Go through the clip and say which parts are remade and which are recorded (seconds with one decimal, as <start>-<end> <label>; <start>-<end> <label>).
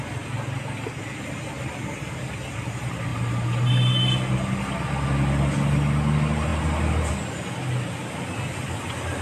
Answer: 0.0-9.2 recorded